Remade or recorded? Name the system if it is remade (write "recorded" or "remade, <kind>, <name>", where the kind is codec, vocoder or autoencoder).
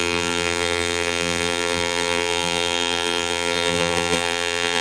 remade, vocoder, BigVGAN v2